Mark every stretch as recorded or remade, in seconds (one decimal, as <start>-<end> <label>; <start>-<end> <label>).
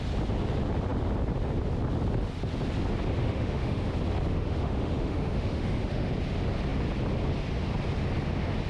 0.0-3.2 recorded; 3.2-3.9 remade; 3.9-4.3 recorded; 4.3-6.1 remade; 6.1-8.7 recorded